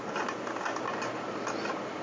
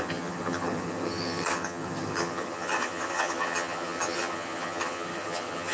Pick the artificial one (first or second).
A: second